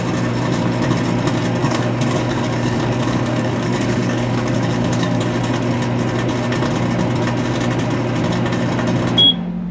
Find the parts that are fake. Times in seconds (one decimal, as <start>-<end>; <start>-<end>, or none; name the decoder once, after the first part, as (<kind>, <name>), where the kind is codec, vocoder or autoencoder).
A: 1.6-5.2 (codec, DAC)